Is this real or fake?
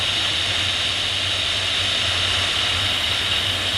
real